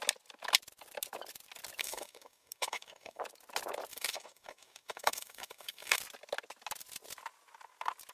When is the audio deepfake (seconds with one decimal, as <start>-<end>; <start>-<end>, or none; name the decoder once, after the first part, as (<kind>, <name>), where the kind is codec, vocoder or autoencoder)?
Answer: 1.8-3.2 (codec, DAC); 3.9-6.0